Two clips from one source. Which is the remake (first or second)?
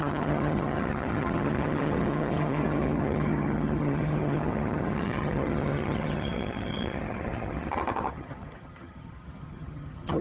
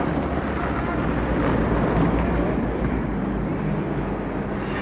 first